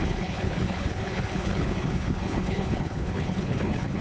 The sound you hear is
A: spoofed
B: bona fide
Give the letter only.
A